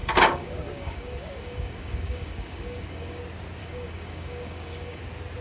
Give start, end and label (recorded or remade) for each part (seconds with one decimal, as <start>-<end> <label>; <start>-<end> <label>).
0.0-3.2 remade; 3.2-3.6 recorded; 3.6-5.0 remade; 5.0-5.4 recorded